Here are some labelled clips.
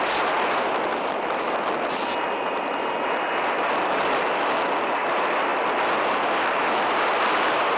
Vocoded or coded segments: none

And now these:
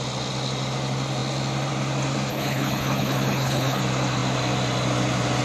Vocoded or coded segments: 2.3-3.8